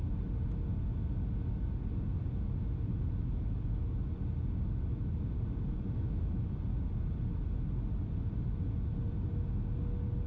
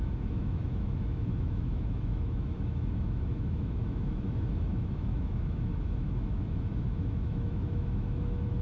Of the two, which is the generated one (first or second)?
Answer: second